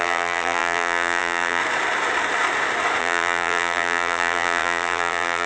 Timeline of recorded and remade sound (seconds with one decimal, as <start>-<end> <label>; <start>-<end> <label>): 0.0-1.6 remade; 1.6-3.0 recorded; 3.0-5.5 remade